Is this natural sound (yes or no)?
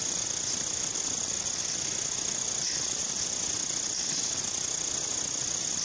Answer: yes